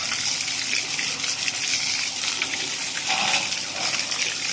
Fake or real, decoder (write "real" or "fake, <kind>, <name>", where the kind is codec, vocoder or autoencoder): real